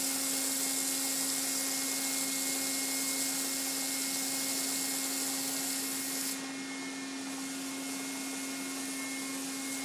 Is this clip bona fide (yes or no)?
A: yes